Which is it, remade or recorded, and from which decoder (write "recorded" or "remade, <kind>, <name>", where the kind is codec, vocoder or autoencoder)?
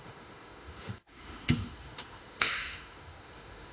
remade, autoencoder, DAC-VAE